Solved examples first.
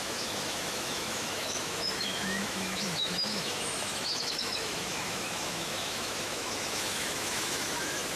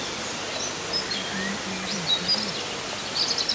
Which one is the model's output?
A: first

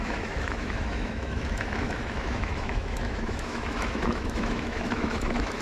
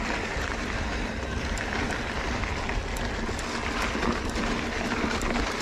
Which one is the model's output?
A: first